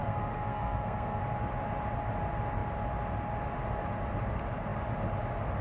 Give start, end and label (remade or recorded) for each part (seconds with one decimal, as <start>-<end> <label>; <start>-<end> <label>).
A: 0.0-1.2 remade; 1.2-5.6 recorded

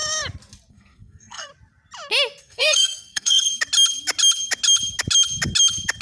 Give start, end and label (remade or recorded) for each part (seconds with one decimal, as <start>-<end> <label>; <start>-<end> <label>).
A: 0.0-0.7 recorded; 0.7-1.5 remade; 1.5-2.4 recorded; 2.4-3.5 remade; 3.5-6.0 recorded

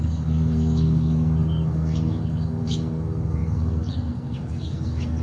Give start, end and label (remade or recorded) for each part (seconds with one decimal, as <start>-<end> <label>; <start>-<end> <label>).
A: 0.0-5.2 remade

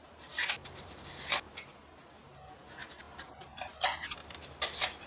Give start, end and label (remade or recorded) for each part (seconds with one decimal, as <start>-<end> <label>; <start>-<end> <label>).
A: 0.0-5.1 recorded

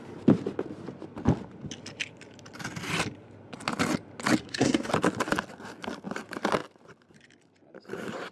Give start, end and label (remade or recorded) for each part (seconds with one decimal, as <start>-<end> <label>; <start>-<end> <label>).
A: 0.0-4.4 recorded; 4.4-4.9 remade; 4.9-8.3 recorded